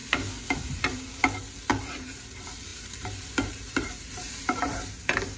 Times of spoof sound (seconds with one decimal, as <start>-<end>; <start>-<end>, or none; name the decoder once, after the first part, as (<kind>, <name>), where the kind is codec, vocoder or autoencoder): 0.5-1.2 (vocoder, BigVGAN v2); 1.7-5.4

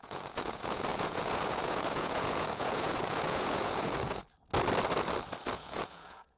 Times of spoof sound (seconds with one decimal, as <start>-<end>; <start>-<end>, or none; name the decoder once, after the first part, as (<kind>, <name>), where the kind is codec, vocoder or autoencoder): 0.0-4.2 (vocoder, Vocos); 5.5-6.4